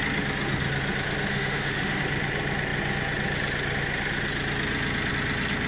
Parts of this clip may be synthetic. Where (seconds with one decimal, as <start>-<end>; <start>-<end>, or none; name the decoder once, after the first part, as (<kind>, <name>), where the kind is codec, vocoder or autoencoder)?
1.3-2.0 (autoencoder, DAC-VAE)